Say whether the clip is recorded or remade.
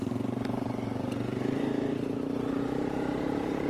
recorded